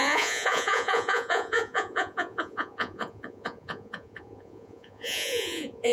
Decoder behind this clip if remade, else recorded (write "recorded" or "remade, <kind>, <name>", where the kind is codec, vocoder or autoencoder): remade, vocoder, Vocos